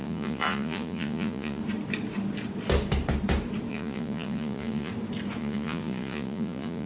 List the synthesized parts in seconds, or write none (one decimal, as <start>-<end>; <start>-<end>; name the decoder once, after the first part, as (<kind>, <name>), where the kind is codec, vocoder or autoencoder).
0.0-1.6 (vocoder, Vocos); 3.7-4.9; 5.4-6.9